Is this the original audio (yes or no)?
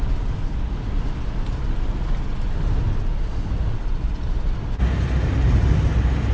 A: yes